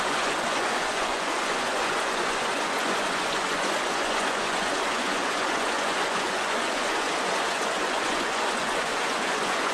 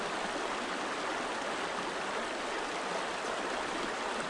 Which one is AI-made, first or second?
first